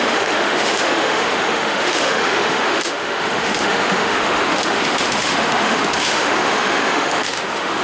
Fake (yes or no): yes